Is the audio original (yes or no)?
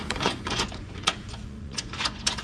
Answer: no